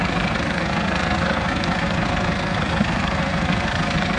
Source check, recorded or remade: remade